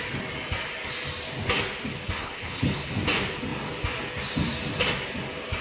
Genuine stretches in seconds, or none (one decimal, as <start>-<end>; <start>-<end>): 0.0-2.2; 2.9-5.6